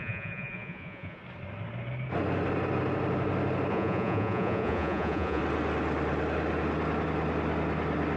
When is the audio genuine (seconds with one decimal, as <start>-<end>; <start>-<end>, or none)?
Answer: 1.2-3.7; 5.4-8.2